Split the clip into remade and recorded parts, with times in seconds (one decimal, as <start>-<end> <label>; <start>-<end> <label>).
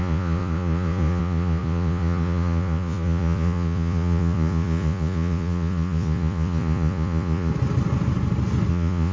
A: 0.0-7.5 remade; 7.5-8.7 recorded; 8.7-9.1 remade